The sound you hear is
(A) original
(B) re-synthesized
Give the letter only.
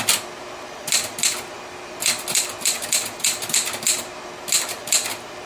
A